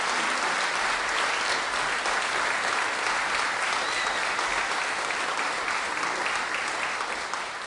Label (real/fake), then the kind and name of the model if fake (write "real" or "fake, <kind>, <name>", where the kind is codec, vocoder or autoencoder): real